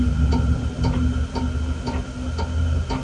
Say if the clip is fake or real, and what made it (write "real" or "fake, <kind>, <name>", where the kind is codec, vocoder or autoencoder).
real